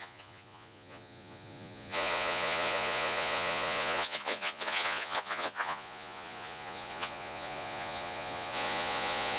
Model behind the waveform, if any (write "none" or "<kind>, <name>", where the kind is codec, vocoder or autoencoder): vocoder, Vocos